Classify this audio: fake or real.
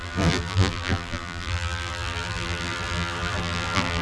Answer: fake